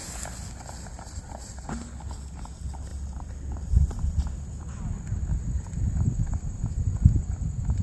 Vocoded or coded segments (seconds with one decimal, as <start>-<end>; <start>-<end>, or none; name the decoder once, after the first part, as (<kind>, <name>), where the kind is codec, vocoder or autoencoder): 2.9-4.0 (vocoder, BigVGAN v2)